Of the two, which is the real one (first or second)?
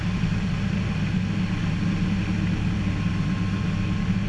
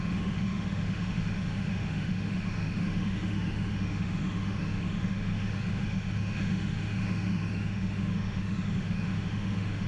first